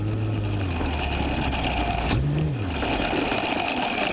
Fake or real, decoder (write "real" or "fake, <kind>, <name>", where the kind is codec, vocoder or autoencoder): real